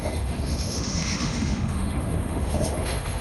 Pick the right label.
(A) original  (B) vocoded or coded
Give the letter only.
B